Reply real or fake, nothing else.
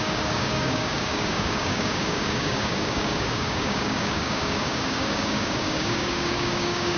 fake